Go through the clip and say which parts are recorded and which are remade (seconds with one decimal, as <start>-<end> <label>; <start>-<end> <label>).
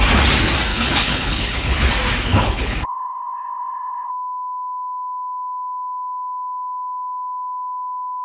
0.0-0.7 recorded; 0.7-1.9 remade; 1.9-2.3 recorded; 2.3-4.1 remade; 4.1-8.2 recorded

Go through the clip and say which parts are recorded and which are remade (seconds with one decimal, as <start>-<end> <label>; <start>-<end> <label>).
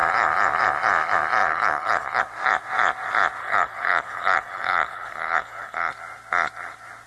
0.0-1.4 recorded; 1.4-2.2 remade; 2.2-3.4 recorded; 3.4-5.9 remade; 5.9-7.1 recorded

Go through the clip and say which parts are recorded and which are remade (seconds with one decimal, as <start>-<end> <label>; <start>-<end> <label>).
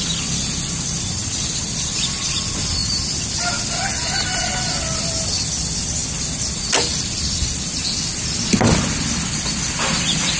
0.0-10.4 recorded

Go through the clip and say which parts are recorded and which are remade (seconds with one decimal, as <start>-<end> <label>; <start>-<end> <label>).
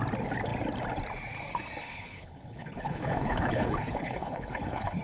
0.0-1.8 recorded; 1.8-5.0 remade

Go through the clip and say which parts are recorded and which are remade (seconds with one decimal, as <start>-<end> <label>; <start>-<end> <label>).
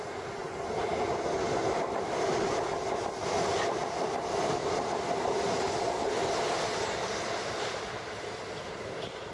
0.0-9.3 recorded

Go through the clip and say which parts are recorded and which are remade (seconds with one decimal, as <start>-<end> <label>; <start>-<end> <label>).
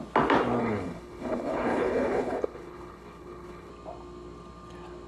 0.0-0.6 recorded; 0.6-3.7 remade; 3.7-5.1 recorded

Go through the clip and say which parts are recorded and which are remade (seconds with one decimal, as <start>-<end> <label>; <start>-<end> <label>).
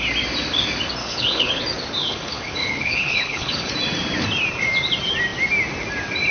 0.0-1.0 recorded; 1.0-1.6 remade; 1.6-2.0 recorded; 2.0-3.7 remade; 3.7-6.3 recorded